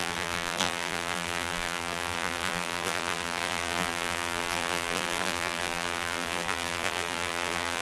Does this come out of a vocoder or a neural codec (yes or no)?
yes